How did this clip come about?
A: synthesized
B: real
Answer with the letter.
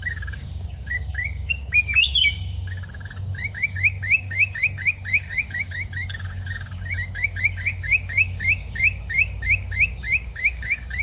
A